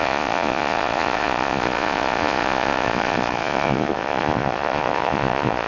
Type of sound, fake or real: fake